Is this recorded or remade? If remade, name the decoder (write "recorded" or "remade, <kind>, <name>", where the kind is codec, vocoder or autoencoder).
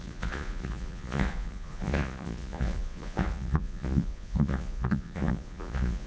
remade, vocoder, Vocos